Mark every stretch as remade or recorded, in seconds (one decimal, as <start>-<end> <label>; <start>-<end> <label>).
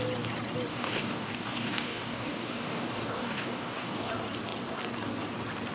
0.0-0.7 recorded; 0.7-4.1 remade; 4.1-5.7 recorded